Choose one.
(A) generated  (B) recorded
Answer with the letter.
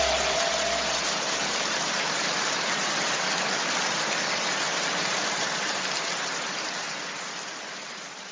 B